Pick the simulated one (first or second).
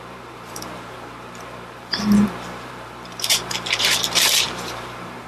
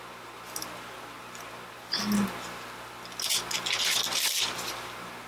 first